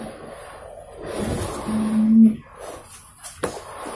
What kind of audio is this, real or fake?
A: real